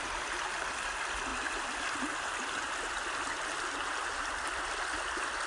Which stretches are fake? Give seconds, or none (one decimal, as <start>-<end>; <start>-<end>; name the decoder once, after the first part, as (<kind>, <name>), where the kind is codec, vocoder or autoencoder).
none